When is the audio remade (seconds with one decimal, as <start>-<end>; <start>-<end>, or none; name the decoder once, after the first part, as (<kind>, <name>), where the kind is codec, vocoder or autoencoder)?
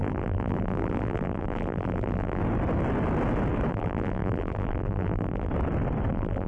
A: 0.0-2.4 (vocoder, BigVGAN v2); 3.7-5.5; 6.1-6.5